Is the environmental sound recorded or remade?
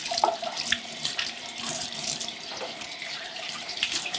remade